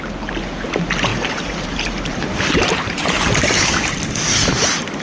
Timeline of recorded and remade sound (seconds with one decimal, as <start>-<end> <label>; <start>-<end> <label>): 0.0-1.1 recorded; 1.1-3.1 remade; 3.1-5.0 recorded